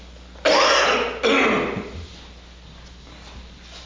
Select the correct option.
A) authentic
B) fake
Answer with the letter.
A